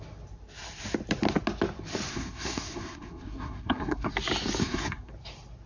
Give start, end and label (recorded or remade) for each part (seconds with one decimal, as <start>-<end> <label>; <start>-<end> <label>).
0.0-2.1 recorded; 2.1-4.1 remade; 4.1-4.6 recorded; 4.6-5.1 remade; 5.1-5.7 recorded